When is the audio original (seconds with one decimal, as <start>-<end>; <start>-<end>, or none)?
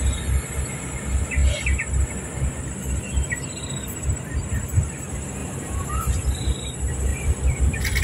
0.0-5.4; 6.0-7.1